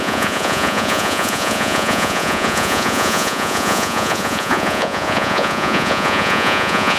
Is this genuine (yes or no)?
no